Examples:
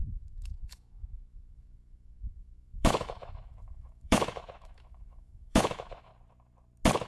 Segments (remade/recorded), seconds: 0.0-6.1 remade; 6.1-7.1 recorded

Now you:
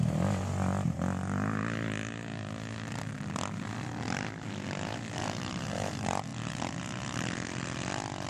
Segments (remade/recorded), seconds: 0.0-8.3 recorded